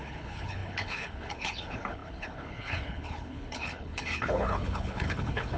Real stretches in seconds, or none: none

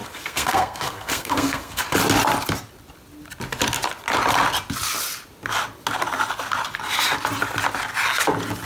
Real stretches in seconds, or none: 1.8-8.7

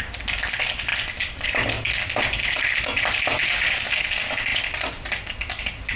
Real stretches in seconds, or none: 0.0-6.0

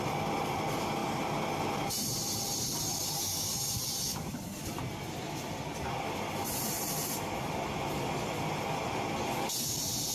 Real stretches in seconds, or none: 0.0-10.1

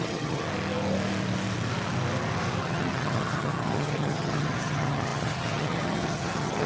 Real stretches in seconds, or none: 0.4-2.6